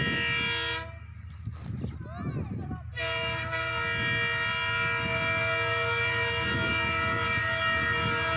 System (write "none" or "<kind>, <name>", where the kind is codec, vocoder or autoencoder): none